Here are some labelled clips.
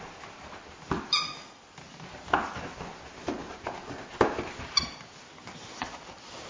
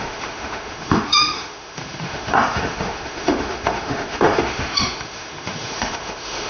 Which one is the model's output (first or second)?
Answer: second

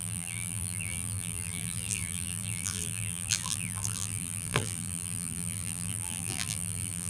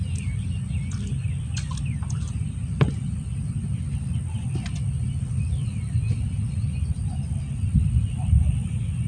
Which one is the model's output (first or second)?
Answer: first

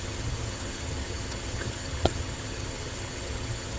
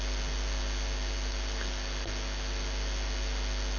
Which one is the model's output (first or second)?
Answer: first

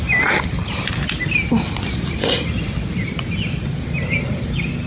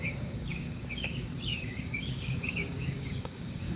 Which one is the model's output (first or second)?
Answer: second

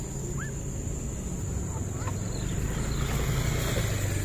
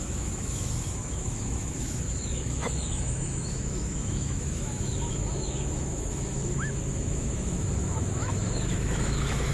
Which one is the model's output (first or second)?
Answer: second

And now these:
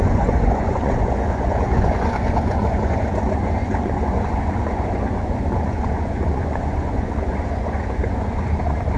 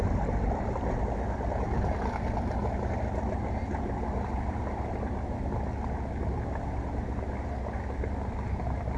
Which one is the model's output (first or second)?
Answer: first